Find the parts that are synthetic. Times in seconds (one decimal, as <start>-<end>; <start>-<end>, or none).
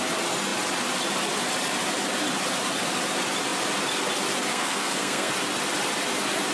4.5-5.3